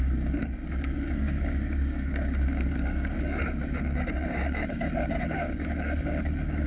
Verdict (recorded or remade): remade